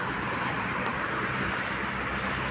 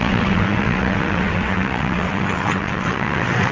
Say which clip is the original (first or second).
first